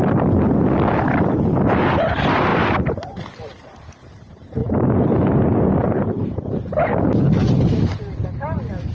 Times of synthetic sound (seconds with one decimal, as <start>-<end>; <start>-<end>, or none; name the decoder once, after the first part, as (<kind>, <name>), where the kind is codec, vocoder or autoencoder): 0.0-8.9 (vocoder, BigVGAN v2)